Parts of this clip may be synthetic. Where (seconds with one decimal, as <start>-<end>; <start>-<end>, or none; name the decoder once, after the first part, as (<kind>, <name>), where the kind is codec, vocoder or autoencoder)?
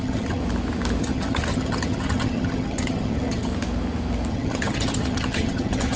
0.0-0.4 (vocoder, HiFi-GAN); 1.0-3.5; 4.3-6.0